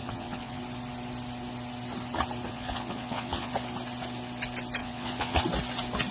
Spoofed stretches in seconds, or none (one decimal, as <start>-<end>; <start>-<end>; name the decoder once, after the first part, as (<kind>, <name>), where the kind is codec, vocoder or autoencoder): 0.0-0.6 (vocoder, Vocos); 2.5-3.5; 4.8-5.4